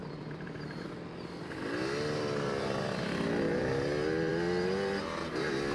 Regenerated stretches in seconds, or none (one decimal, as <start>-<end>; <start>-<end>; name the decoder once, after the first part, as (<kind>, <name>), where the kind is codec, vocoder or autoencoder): none